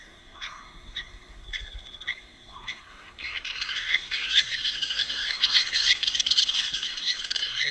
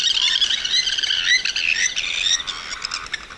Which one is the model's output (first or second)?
first